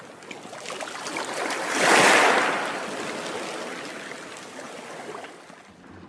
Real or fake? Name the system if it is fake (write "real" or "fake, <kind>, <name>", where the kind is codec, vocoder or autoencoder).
real